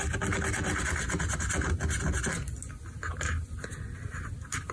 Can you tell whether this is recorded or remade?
recorded